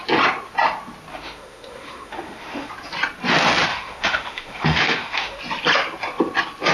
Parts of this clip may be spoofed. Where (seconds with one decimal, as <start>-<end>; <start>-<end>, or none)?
1.1-2.7; 3.7-5.4

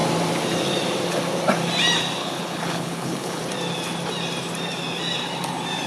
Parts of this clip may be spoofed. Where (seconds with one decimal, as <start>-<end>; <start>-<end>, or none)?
2.2-3.4

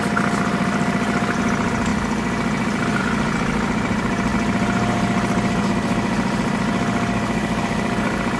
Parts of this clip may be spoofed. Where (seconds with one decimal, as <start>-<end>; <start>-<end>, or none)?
none

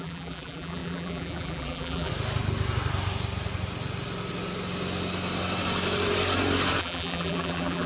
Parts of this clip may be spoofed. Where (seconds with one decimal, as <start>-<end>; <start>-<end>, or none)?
0.0-2.1; 6.8-7.9